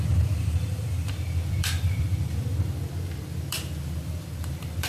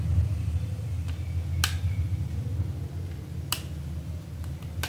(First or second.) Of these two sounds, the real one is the second